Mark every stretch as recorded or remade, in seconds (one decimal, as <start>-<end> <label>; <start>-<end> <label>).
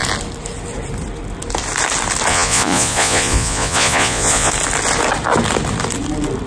0.0-2.3 recorded; 2.3-4.5 remade; 4.5-6.5 recorded